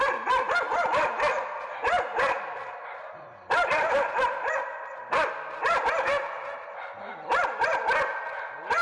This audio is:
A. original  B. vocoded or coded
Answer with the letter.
B